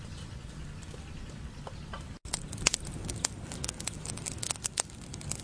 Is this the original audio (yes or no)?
yes